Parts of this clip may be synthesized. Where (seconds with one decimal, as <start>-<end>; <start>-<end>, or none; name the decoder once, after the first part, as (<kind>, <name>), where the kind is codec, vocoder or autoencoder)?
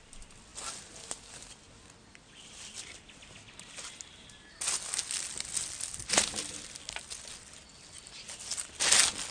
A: none